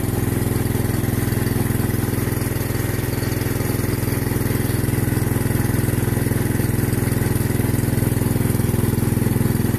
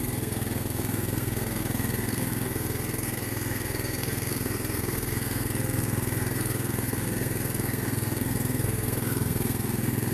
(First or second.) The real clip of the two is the first